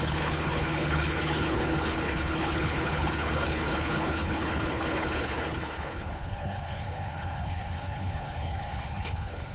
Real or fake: fake